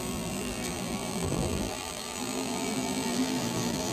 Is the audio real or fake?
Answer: fake